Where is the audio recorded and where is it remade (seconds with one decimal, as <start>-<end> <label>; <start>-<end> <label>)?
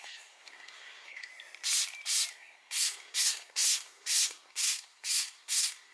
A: 0.0-1.3 remade; 1.3-2.3 recorded; 2.3-5.9 remade